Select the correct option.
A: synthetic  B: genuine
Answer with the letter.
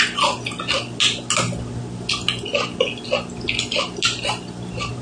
B